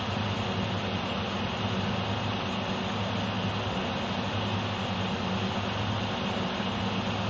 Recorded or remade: recorded